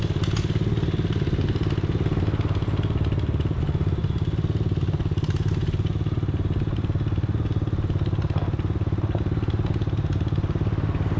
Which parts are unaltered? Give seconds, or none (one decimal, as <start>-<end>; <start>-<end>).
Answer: 0.0-11.2

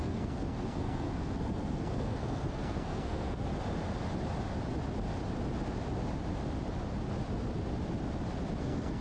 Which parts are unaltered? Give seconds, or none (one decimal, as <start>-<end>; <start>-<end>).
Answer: 3.5-8.6

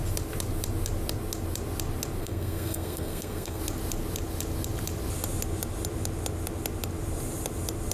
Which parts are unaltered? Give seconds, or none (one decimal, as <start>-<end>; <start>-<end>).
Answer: 0.0-2.2; 3.6-7.9

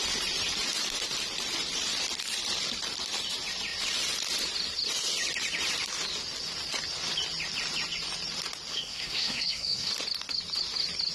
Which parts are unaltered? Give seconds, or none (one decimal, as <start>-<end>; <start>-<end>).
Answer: 0.0-8.7; 9.9-11.1

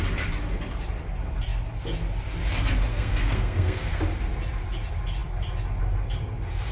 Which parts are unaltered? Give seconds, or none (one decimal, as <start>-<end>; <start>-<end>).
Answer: 0.0-2.9; 4.0-6.7

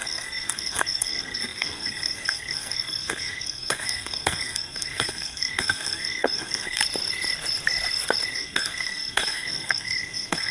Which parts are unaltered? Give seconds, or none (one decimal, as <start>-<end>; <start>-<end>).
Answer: 6.8-8.3